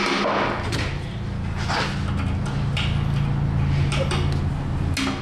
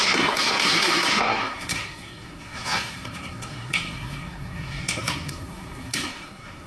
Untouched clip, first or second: first